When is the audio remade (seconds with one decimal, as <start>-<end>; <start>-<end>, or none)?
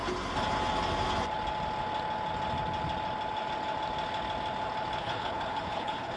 5.0-6.2